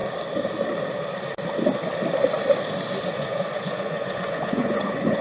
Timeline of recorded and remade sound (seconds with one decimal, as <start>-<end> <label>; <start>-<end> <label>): 0.0-3.1 recorded; 3.1-5.2 remade